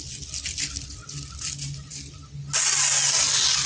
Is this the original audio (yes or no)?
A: yes